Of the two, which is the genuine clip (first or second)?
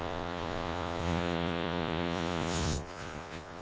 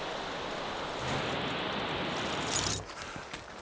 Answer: second